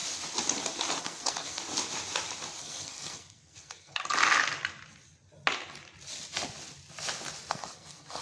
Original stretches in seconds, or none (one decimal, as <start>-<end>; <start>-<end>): 0.0-1.0; 1.6-2.6; 4.0-7.5